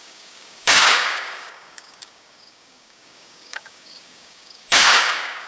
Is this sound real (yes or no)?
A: no